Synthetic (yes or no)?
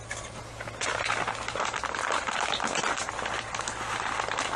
no